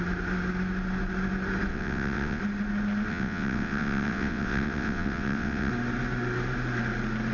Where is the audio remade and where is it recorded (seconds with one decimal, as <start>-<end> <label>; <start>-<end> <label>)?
0.0-1.7 recorded; 1.7-2.4 remade; 2.4-3.1 recorded; 3.1-5.7 remade; 5.7-7.3 recorded